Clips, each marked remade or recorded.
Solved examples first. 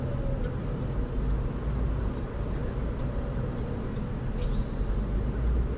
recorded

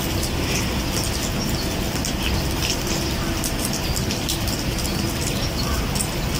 recorded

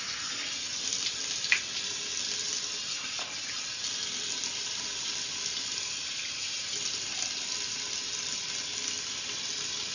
recorded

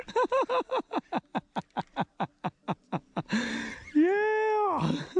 recorded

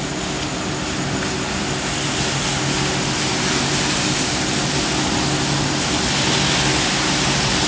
recorded